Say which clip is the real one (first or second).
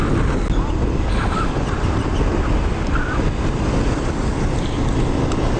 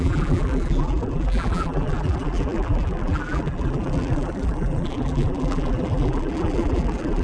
first